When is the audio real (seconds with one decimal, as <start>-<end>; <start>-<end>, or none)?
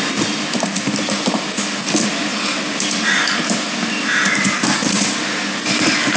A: 0.0-6.2